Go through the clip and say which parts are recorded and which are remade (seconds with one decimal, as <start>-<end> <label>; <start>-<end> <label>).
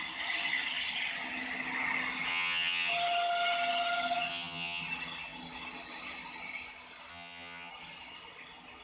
0.0-2.3 recorded; 2.3-2.9 remade; 2.9-4.3 recorded; 4.3-4.8 remade; 4.8-7.1 recorded; 7.1-7.7 remade; 7.7-8.8 recorded